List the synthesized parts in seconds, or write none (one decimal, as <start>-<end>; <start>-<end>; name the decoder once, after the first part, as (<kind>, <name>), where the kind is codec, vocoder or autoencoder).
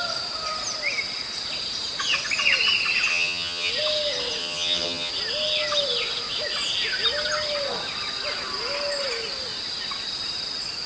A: 3.1-3.7 (vocoder, HiFi-GAN); 4.4-5.1